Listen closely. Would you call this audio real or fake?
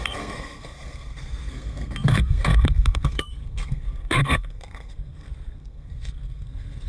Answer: fake